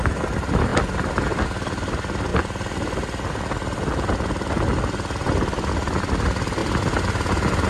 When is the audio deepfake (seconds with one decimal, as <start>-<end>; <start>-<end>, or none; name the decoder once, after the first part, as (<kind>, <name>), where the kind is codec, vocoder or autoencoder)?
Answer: 0.0-2.3 (vocoder, BigVGAN v2); 5.7-6.6